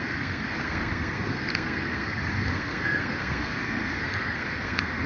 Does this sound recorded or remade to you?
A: remade